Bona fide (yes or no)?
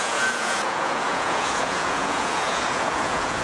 no